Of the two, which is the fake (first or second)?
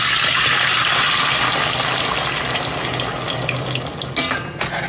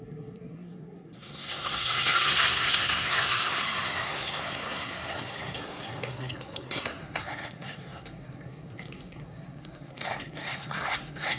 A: second